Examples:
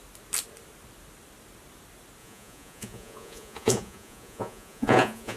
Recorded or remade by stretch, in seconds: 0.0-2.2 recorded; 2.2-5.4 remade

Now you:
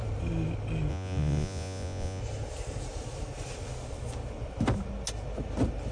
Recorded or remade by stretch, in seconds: 0.0-0.9 recorded; 0.9-2.2 remade; 2.2-5.9 recorded

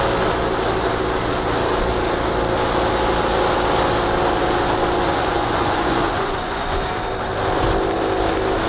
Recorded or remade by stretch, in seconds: 0.0-5.1 recorded; 5.1-6.8 remade; 6.8-8.7 recorded

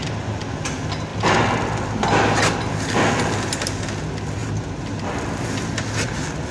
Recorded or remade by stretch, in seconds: 0.0-6.5 recorded

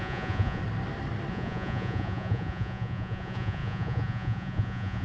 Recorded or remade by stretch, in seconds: 0.0-0.6 remade; 0.6-1.3 recorded; 1.3-5.0 remade

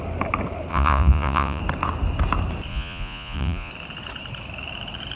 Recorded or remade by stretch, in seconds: 0.0-0.7 recorded; 0.7-1.6 remade; 1.6-2.7 recorded; 2.7-3.7 remade; 3.7-5.2 recorded

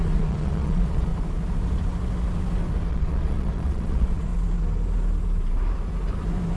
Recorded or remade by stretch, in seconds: 0.0-1.1 remade; 1.1-2.9 recorded; 2.9-4.3 remade; 4.3-6.6 recorded

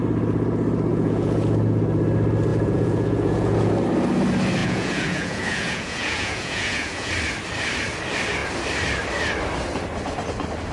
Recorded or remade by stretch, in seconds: 0.0-0.9 recorded; 0.9-1.8 remade; 1.8-2.5 recorded; 2.5-3.7 remade; 3.7-4.6 recorded; 4.6-7.1 remade; 7.1-10.7 recorded